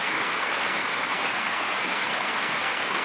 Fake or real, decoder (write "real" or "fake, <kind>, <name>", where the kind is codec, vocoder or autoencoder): fake, codec, SNAC